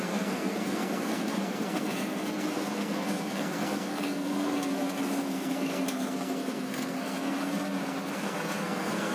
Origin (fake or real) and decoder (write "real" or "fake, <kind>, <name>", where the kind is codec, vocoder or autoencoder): fake, codec, SNAC